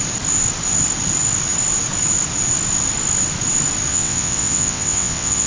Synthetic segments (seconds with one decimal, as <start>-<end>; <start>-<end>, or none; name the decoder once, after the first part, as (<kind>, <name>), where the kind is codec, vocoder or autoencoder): 3.9-5.5 (vocoder, WaveNeXt)